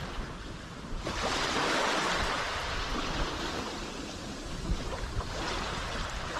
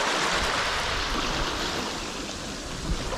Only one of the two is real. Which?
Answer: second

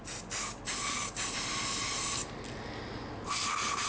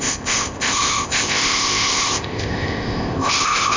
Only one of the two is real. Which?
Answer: first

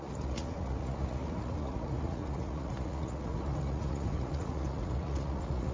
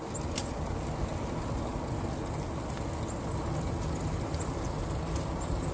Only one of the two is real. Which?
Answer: second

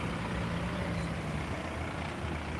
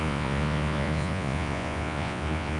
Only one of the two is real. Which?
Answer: first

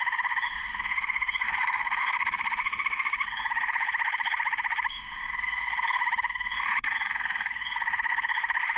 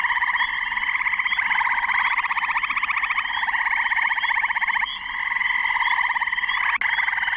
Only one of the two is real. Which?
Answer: second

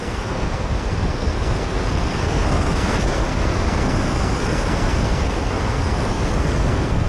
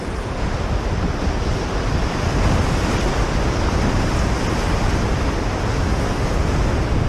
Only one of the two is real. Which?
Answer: second